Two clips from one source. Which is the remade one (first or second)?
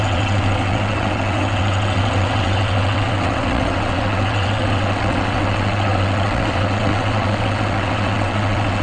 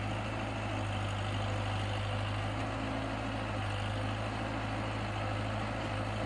first